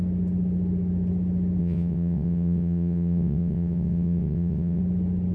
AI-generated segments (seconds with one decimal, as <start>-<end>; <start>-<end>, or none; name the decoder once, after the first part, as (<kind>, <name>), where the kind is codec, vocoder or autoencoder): 1.6-4.8 (vocoder, WaveNeXt)